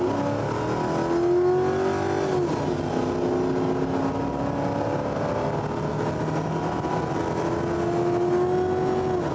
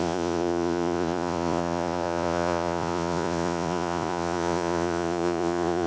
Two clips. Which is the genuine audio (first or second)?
first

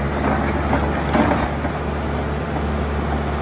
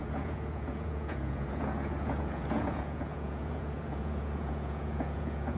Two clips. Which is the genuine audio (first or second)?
first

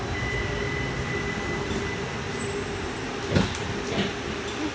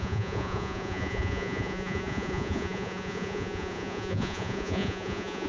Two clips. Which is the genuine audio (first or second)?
first